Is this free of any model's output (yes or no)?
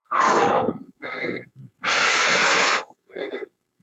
no